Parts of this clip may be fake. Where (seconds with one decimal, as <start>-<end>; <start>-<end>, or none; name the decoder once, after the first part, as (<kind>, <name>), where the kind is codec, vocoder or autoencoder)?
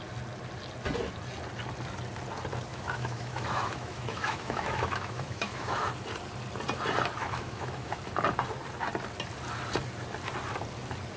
2.7-5.9 (autoencoder, DAC-VAE); 7.2-8.0